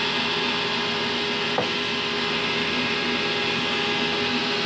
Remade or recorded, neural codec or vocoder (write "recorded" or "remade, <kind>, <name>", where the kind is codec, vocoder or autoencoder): recorded